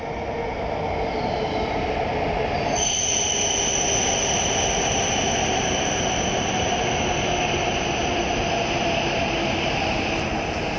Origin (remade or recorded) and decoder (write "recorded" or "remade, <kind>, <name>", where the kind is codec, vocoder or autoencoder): recorded